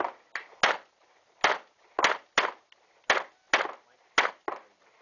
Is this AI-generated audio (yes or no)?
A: no